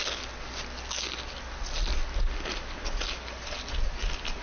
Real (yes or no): yes